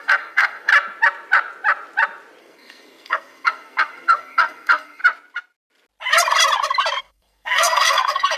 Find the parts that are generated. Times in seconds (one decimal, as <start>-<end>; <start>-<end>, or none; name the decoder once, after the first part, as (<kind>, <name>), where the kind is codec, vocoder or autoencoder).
0.0-0.7 (codec, SNAC); 2.4-5.0; 7.0-8.4